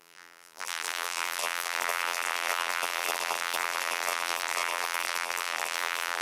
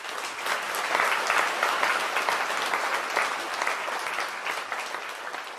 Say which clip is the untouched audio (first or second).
second